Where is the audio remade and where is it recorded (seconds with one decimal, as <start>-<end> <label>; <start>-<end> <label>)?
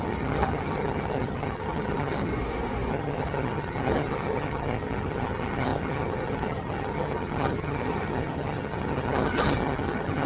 0.0-2.3 remade; 2.3-2.9 recorded; 2.9-10.3 remade